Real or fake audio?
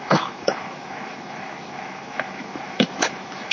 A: fake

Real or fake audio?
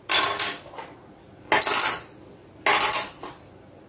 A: real